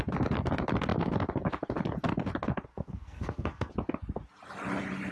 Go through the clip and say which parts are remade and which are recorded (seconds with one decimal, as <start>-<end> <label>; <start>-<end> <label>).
0.0-2.7 recorded; 2.7-3.7 remade; 3.7-5.1 recorded